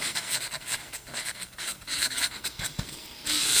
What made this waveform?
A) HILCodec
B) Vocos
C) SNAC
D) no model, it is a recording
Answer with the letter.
C